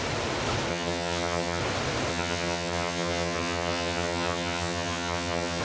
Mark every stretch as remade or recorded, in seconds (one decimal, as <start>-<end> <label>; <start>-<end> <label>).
0.0-0.7 recorded; 0.7-1.6 remade; 1.6-2.1 recorded; 2.1-5.6 remade